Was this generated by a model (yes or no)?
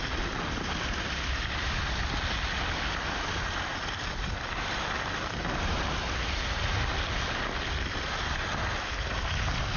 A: no